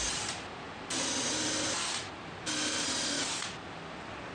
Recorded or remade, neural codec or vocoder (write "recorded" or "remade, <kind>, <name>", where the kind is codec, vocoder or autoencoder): recorded